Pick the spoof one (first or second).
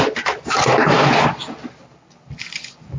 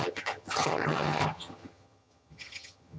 second